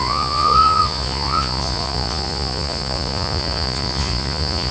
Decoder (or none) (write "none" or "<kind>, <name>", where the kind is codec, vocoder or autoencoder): vocoder, Vocos